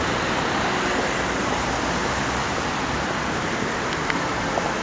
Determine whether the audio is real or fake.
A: real